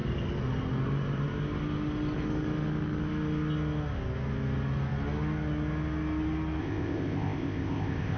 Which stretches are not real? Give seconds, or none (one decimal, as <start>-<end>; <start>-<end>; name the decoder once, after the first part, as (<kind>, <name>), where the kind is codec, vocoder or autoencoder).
6.6-8.2 (codec, ZipCodec)